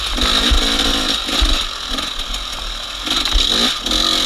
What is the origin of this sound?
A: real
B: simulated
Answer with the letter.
A